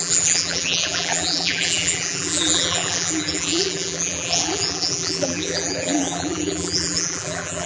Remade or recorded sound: remade